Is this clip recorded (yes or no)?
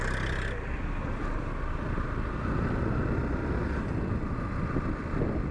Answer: yes